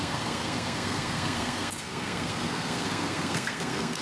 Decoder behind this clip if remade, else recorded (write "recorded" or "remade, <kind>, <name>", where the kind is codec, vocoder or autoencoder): remade, codec, SNAC